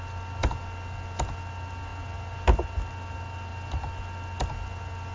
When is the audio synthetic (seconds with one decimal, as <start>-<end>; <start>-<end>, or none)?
none